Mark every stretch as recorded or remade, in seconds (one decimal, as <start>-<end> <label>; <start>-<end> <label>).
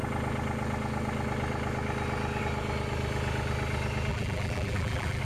0.0-4.1 recorded; 4.1-5.2 remade